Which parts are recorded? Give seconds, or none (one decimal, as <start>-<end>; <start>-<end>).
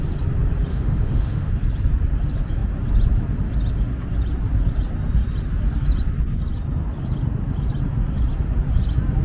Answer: 0.0-0.7; 1.5-9.2